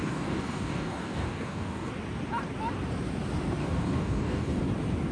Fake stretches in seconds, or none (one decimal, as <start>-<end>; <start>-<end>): 0.0-1.9; 3.6-4.6